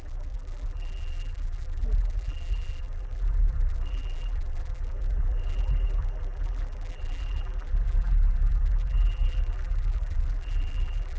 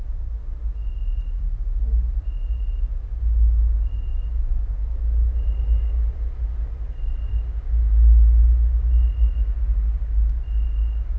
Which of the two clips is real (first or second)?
second